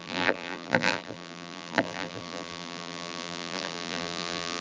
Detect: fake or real fake